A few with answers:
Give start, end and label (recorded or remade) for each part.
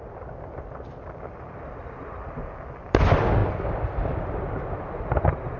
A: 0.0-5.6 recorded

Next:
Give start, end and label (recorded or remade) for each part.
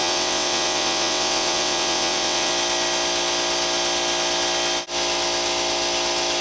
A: 0.0-2.5 remade; 2.5-6.4 recorded